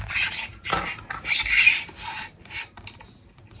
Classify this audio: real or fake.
real